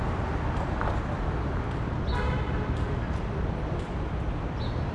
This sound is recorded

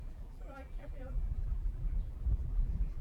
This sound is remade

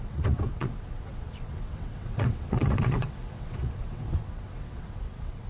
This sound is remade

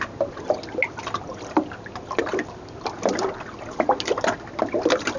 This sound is recorded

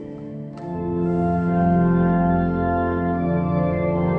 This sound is remade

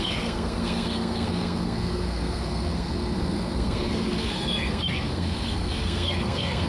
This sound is remade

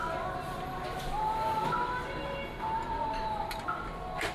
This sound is recorded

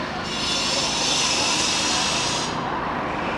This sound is recorded